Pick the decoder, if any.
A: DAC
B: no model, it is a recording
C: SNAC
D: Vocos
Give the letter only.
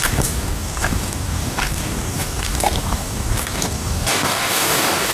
A